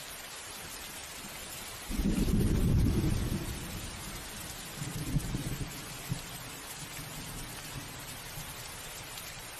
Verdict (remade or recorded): recorded